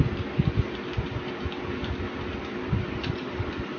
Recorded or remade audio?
recorded